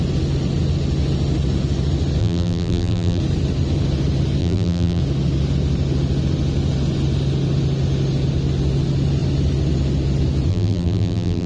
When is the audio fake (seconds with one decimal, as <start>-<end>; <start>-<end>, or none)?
2.2-3.2; 4.4-5.0; 10.5-11.5